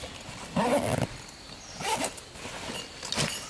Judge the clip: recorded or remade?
recorded